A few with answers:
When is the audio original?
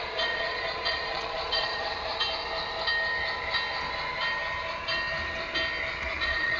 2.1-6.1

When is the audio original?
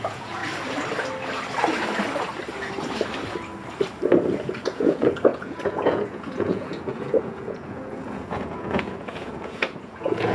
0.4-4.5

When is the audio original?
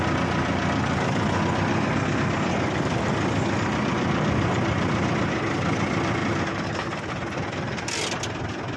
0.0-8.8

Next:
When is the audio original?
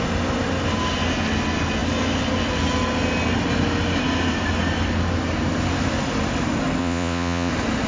0.0-6.8; 7.5-7.9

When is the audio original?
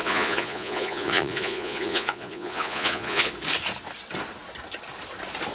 3.3-5.5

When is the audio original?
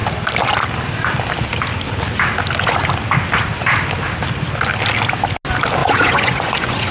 0.0-5.8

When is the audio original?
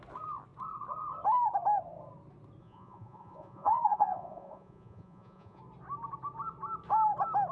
0.0-2.6; 5.6-7.5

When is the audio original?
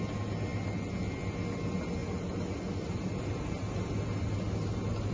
0.0-5.1